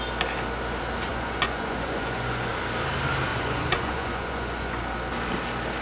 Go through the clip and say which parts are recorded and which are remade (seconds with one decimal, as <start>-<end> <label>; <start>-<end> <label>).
0.0-1.1 recorded; 1.1-2.5 remade; 2.5-3.3 recorded; 3.3-4.8 remade; 4.8-5.8 recorded